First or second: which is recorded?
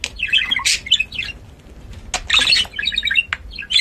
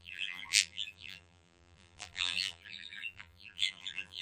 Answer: first